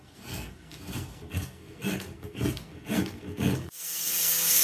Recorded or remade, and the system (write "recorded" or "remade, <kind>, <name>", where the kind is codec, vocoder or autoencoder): remade, codec, SNAC